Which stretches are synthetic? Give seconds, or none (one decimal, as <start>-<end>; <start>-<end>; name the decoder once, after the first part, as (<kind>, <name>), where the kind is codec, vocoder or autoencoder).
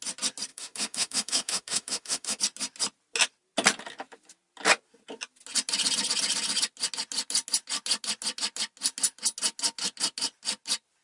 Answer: 0.5-2.4 (autoencoder, DAC-VAE)